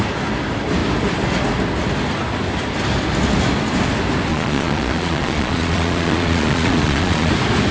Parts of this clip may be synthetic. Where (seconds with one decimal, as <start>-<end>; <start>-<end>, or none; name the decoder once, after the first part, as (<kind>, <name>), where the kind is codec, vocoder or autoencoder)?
4.3-7.3 (vocoder, Vocos)